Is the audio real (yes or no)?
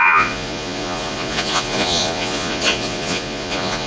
no